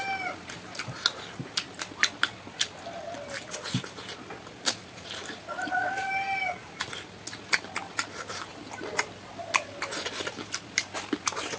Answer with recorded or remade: recorded